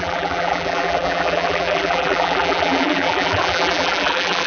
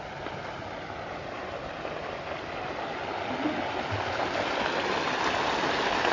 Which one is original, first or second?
second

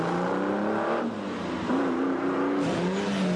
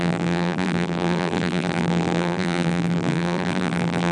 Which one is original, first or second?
first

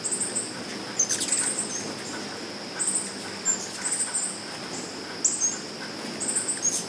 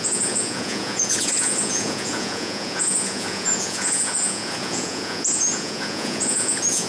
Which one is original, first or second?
first